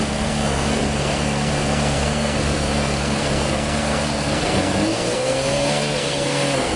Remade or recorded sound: remade